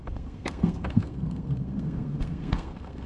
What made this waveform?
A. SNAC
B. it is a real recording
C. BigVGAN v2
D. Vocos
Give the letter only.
A